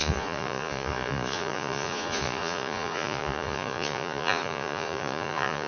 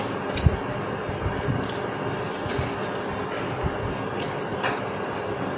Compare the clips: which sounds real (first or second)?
second